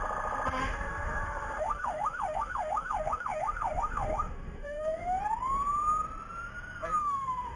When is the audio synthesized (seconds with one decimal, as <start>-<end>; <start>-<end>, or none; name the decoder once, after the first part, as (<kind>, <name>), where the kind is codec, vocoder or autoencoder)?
0.6-5.2 (autoencoder, DAC-VAE); 7.0-7.6